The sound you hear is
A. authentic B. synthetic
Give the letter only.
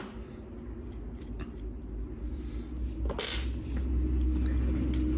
A